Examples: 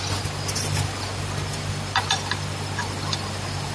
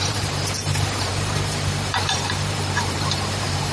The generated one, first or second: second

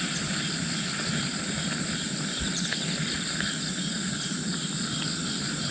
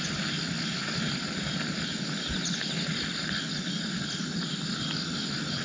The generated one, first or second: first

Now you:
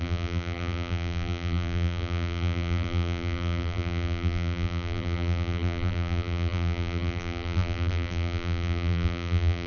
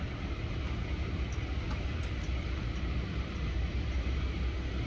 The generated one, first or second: first